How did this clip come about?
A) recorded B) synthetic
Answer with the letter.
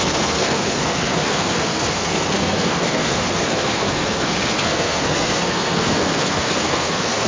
B